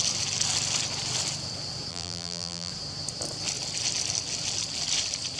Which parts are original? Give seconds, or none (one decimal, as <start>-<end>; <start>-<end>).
0.0-1.9; 2.7-5.4